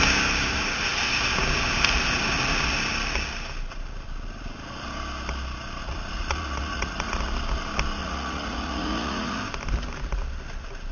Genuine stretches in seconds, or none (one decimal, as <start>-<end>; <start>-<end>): 0.0-5.8; 7.2-8.0; 9.4-10.9

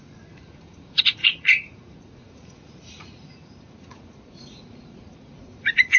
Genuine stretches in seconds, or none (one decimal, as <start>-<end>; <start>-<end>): none

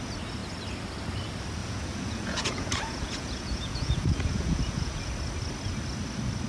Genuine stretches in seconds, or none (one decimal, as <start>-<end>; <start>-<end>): 0.0-1.6; 5.1-6.5

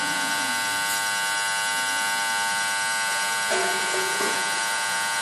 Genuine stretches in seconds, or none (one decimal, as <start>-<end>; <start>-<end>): 0.5-3.6

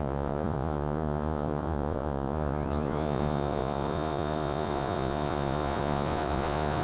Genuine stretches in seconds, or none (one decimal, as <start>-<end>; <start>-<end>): none

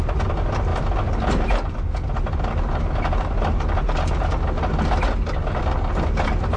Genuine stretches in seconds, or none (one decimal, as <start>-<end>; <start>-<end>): 0.0-6.6